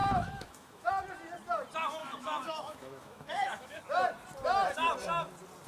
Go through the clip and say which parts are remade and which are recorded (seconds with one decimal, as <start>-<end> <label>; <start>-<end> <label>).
0.0-0.9 remade; 0.9-2.0 recorded; 2.0-3.8 remade; 3.8-5.7 recorded